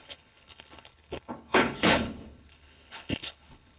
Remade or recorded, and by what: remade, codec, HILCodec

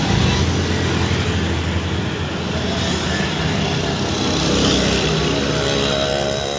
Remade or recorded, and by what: recorded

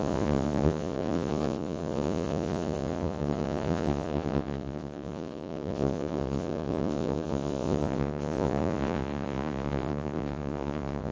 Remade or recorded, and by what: remade, vocoder, Vocos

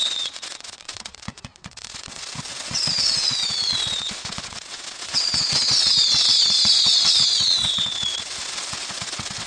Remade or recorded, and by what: remade, vocoder, WaveNeXt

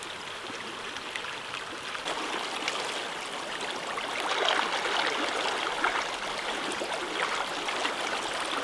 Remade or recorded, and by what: recorded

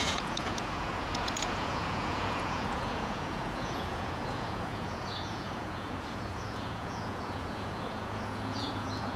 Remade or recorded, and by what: remade, vocoder, Vocos